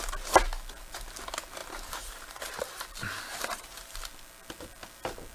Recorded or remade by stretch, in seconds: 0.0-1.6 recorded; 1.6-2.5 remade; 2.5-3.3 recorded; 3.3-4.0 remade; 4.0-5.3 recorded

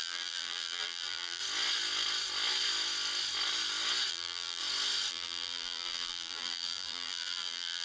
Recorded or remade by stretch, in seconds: 0.0-1.4 remade; 1.4-4.1 recorded; 4.1-4.6 remade; 4.6-5.1 recorded; 5.1-7.8 remade

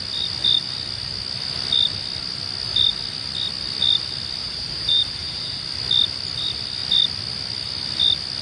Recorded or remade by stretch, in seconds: 0.0-4.4 recorded; 4.4-5.6 remade; 5.6-8.4 recorded

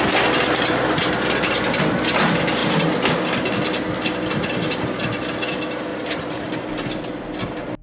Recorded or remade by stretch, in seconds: 0.0-5.9 recorded; 5.9-6.4 remade; 6.4-7.8 recorded

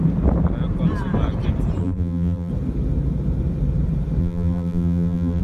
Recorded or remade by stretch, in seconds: 0.0-1.8 recorded; 1.8-2.5 remade; 2.5-4.2 recorded; 4.2-5.4 remade